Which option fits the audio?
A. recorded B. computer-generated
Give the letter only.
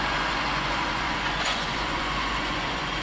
B